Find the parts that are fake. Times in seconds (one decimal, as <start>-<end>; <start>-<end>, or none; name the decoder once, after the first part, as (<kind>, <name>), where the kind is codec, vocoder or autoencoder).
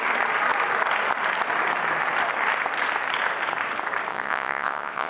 4.1-5.1 (vocoder, WaveNeXt)